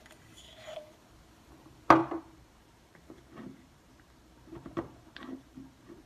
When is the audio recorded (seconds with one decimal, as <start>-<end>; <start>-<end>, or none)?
0.0-2.0